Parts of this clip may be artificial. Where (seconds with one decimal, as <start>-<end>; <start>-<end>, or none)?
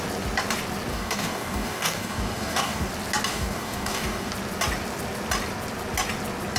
0.9-2.9; 3.3-4.3